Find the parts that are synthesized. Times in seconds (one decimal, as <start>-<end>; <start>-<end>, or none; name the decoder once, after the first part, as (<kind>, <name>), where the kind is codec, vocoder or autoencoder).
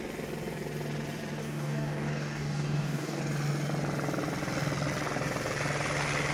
1.4-3.2 (codec, DAC)